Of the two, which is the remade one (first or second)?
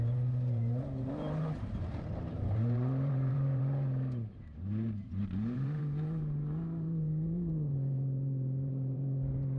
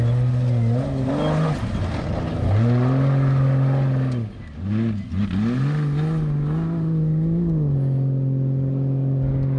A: first